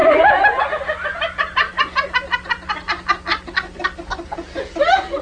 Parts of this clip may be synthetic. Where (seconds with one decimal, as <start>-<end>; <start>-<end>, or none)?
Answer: none